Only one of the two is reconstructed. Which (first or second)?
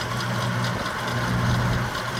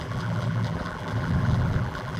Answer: second